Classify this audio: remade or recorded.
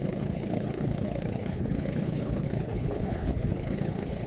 remade